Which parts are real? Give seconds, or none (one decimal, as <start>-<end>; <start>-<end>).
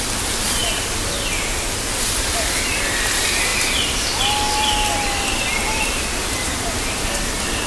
0.0-7.7